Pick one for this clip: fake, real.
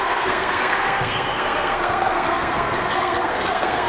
fake